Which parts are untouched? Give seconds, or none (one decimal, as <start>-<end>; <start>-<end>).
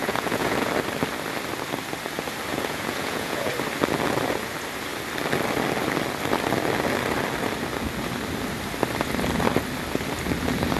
0.7-2.5; 3.5-10.8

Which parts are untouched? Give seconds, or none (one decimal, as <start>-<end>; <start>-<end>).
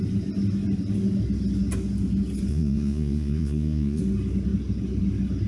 0.0-2.5; 4.0-5.5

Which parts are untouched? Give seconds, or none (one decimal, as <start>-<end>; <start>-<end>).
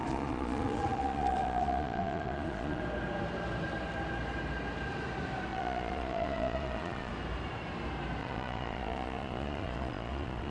2.8-5.5; 7.1-8.2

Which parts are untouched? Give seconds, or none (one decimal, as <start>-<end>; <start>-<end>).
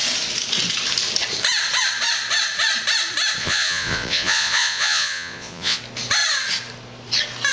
0.0-3.4; 5.8-7.5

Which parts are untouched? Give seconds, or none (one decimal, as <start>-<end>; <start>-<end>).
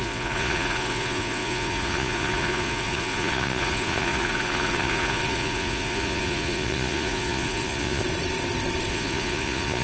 8.0-8.9